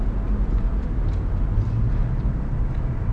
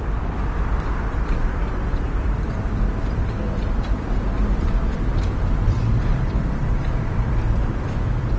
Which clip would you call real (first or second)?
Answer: first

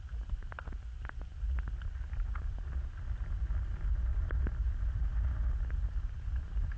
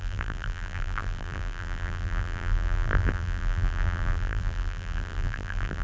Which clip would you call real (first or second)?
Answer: first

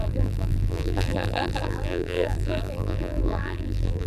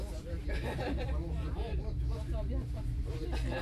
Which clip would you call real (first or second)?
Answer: second